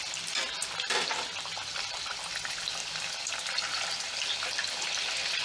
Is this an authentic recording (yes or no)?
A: yes